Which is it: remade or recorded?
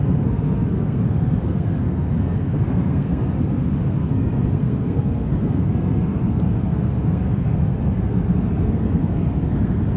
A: remade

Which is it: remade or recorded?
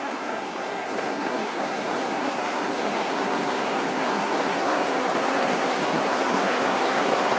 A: remade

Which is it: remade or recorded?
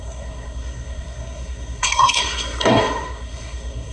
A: remade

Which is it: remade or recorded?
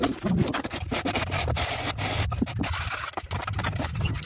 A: recorded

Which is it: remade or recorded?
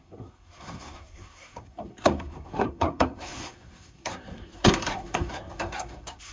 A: remade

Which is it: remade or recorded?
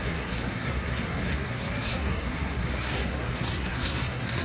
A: remade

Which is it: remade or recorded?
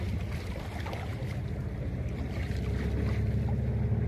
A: recorded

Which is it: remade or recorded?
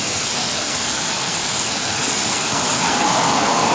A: remade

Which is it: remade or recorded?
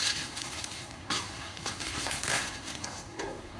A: remade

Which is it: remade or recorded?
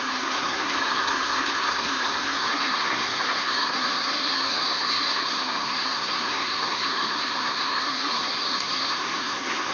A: remade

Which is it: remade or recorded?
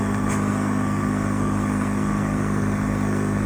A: remade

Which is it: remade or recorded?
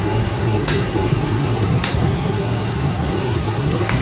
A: remade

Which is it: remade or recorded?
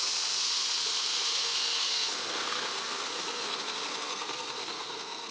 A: remade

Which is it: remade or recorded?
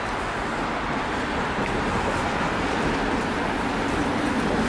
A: recorded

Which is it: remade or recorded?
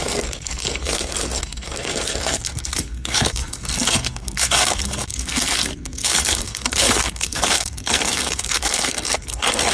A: remade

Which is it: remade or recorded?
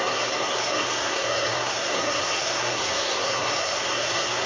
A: remade